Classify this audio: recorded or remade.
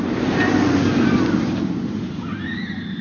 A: recorded